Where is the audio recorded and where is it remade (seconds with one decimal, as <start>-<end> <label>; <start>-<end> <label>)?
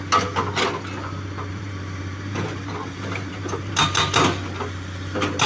0.0-1.5 recorded; 1.5-3.7 remade; 3.7-5.5 recorded